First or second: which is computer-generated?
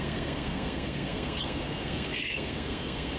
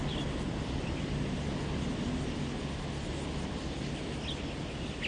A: first